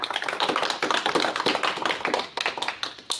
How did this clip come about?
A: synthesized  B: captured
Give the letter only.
B